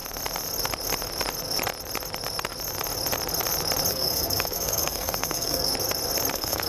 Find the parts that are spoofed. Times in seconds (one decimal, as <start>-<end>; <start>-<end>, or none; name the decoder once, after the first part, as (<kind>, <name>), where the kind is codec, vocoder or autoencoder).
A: 3.9-5.7 (codec, SNAC); 6.3-6.7